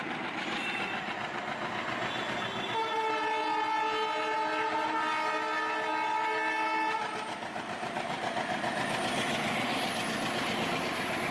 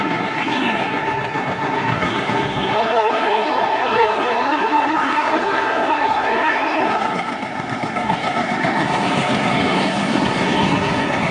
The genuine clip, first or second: first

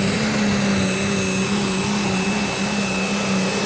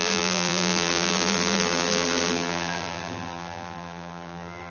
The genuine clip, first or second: first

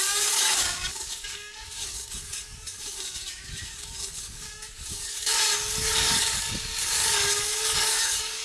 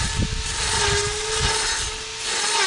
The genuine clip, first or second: second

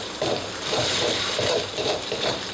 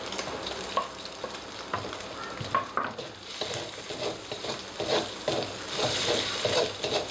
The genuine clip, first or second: second